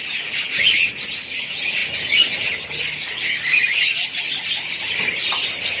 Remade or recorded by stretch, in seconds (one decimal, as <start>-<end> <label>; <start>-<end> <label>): 0.0-5.8 recorded